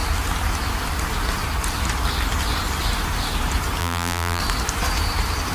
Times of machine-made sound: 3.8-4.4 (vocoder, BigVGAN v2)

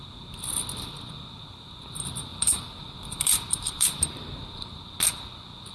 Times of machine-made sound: 2.3-4.8 (vocoder, BigVGAN v2)

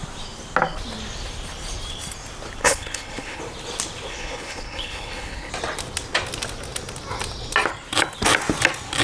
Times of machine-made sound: 2.6-3.4 (codec, HILCodec); 4.1-5.5

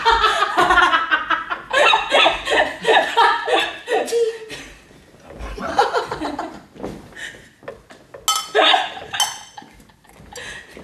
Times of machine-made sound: 2.9-5.8 (vocoder, BigVGAN v2)

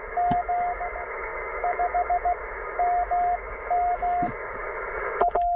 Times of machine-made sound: 0.0-5.6 (autoencoder, DAC-VAE)

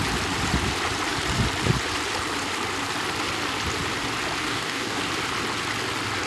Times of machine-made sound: 4.4-5.0 (codec, DAC)

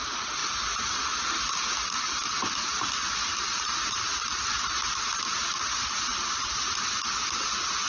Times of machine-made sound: none